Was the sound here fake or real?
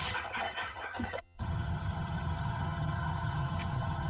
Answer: fake